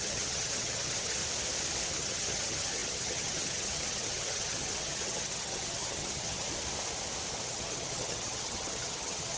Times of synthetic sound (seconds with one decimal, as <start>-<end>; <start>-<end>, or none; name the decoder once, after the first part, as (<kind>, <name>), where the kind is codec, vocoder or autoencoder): 0.0-1.2 (vocoder, HiFi-GAN); 1.9-6.5; 7.5-9.4